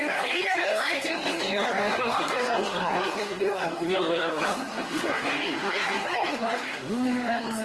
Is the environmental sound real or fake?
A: fake